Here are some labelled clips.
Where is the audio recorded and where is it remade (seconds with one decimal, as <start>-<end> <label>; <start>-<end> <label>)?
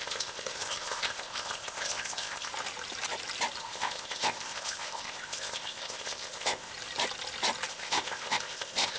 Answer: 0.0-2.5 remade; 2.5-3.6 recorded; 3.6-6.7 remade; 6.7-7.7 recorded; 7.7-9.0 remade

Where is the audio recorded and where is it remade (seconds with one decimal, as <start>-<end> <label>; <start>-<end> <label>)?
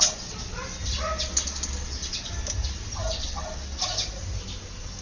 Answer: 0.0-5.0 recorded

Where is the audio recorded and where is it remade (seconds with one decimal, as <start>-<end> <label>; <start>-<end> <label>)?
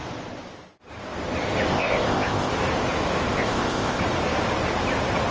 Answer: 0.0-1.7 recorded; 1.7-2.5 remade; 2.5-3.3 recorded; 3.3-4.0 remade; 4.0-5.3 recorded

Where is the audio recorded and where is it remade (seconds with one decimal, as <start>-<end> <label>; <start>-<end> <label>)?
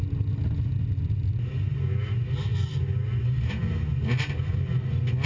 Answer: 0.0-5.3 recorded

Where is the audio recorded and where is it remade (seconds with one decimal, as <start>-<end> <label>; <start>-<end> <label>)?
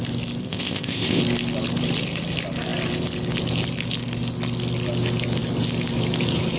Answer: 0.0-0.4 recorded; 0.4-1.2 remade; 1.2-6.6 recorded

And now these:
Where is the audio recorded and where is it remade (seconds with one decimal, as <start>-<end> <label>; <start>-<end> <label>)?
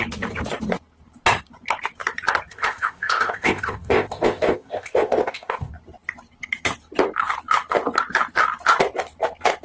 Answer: 0.0-2.5 recorded; 2.5-5.7 remade; 5.7-9.6 recorded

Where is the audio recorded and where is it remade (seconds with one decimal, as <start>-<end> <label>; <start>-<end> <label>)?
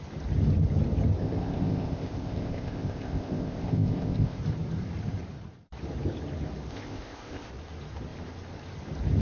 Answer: 0.0-1.2 recorded; 1.2-4.4 remade; 4.4-6.7 recorded; 6.7-7.5 remade; 7.5-9.2 recorded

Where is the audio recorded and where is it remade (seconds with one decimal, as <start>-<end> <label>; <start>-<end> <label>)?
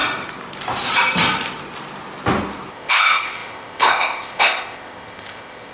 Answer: 0.0-2.7 recorded; 2.7-5.7 remade